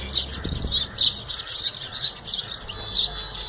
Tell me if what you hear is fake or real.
real